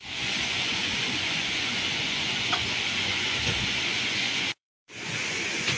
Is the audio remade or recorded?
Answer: remade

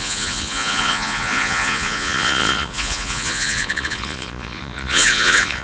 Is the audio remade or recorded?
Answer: remade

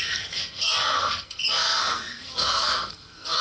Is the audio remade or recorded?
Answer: remade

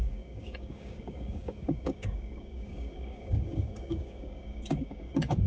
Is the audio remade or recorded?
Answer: remade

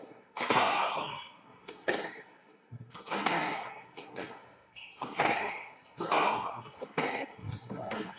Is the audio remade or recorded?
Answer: remade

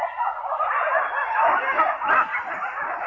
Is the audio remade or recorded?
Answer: recorded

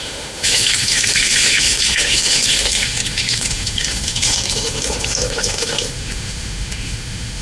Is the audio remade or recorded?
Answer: remade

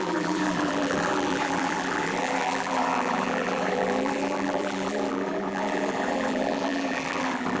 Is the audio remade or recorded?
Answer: remade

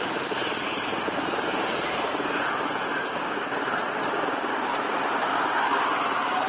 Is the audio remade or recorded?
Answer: remade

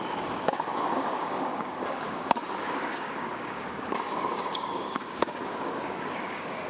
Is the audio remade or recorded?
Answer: remade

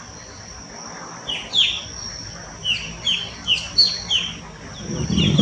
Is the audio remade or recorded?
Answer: recorded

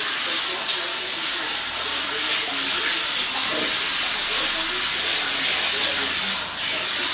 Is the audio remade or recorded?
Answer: recorded